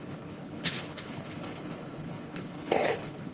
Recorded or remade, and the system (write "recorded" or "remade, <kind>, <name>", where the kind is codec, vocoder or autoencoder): remade, codec, HILCodec